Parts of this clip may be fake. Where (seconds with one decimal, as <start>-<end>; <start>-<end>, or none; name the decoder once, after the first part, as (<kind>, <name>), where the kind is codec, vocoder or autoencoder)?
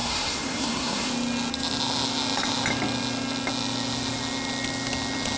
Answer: 0.0-1.1 (codec, SNAC)